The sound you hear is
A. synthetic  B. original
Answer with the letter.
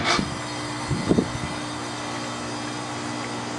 B